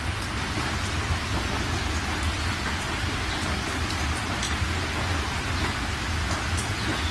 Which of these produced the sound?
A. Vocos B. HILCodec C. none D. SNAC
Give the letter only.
C